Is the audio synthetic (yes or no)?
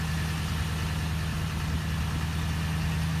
no